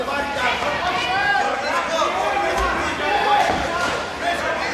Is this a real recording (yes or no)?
yes